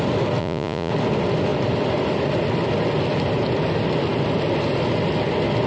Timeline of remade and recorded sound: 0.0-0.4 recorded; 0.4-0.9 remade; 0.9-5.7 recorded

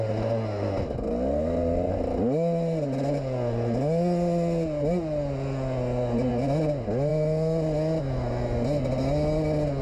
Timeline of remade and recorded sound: 0.0-9.8 recorded

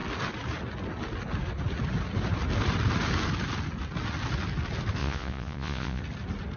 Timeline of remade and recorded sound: 0.0-5.0 recorded; 5.0-6.0 remade; 6.0-6.6 recorded

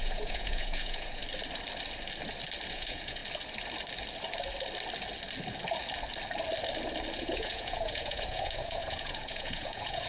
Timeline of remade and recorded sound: 0.0-1.2 remade; 1.2-2.7 recorded; 2.7-3.2 remade; 3.2-7.2 recorded; 7.2-10.1 remade

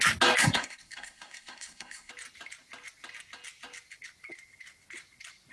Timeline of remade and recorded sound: 0.0-0.4 recorded; 0.4-2.1 remade; 2.1-5.5 recorded